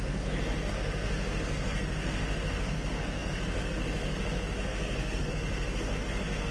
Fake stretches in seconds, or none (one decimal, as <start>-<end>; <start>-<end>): 0.0-6.5